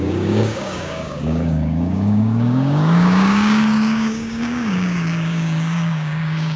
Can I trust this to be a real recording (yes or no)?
no